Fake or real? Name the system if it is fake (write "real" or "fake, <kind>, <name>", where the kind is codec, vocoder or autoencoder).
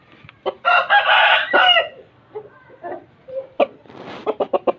real